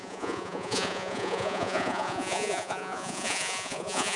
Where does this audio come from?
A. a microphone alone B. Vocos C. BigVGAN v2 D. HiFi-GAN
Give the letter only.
B